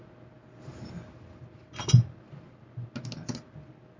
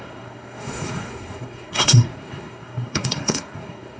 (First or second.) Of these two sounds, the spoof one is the second